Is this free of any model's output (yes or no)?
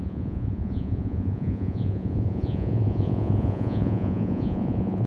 no